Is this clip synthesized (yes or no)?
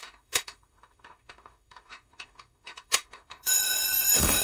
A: yes